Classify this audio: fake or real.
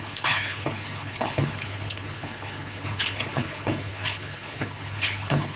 fake